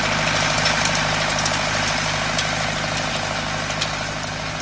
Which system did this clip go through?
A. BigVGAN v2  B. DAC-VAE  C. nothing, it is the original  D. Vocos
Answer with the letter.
C